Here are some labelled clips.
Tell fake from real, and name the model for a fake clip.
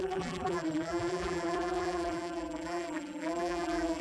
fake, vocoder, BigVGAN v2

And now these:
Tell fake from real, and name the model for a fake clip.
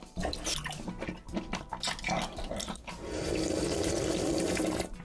real